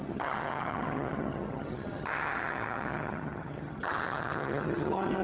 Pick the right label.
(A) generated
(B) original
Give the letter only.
A